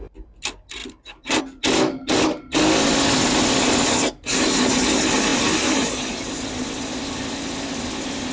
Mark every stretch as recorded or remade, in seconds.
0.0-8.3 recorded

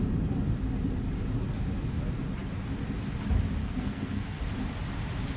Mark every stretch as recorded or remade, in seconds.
0.0-3.6 recorded; 3.6-4.4 remade; 4.4-5.4 recorded

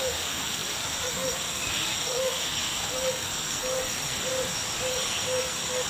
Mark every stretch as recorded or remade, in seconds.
0.0-4.3 remade; 4.3-4.9 recorded; 4.9-5.9 remade

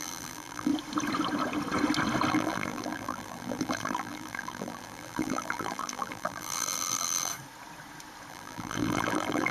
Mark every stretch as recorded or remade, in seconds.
0.0-0.7 remade; 0.7-2.3 recorded; 2.3-7.3 remade; 7.3-8.3 recorded; 8.3-9.5 remade

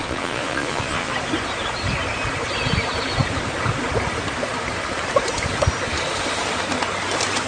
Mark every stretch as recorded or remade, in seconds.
0.0-1.1 remade; 1.1-7.5 recorded

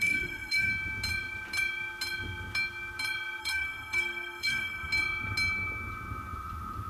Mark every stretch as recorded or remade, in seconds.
0.0-0.7 remade; 0.7-3.4 recorded; 3.4-4.9 remade; 4.9-6.9 recorded